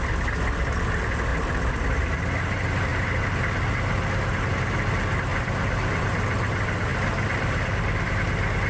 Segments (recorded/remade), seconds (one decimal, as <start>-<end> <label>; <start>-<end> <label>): 0.0-1.3 recorded; 1.3-2.1 remade; 2.1-5.3 recorded; 5.3-6.0 remade; 6.0-6.9 recorded; 6.9-8.1 remade; 8.1-8.7 recorded